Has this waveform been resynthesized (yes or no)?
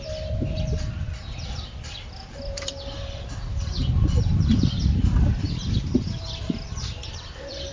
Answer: yes